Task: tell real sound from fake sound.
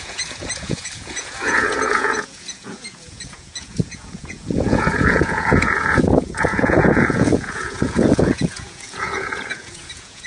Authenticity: fake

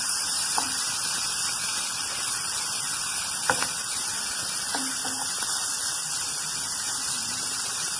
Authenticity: real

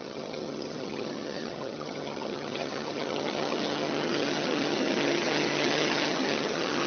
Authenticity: fake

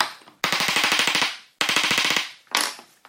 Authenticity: real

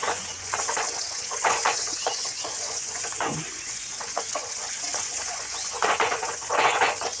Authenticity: fake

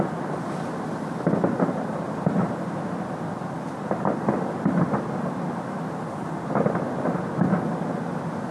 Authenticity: real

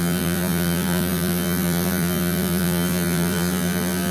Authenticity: fake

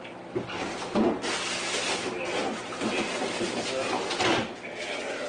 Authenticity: real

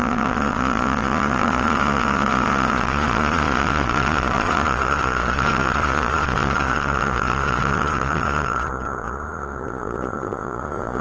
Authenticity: fake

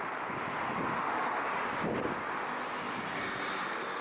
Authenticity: real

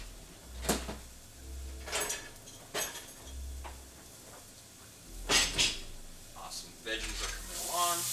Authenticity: real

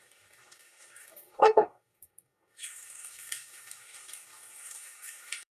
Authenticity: fake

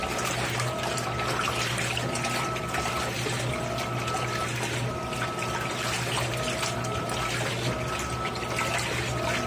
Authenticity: real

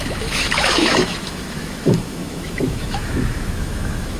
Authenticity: fake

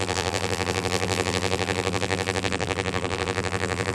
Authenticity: fake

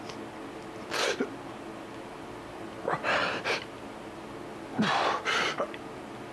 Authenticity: real